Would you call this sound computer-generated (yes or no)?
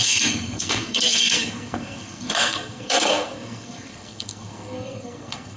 yes